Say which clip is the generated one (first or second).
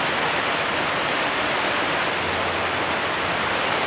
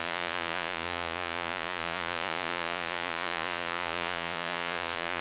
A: second